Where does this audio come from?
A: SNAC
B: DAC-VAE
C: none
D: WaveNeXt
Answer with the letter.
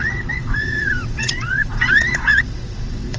D